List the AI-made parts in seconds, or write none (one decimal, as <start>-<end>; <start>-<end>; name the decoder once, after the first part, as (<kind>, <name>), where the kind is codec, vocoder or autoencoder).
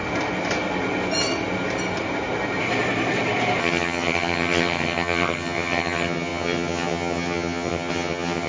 3.6-8.5 (vocoder, HiFi-GAN)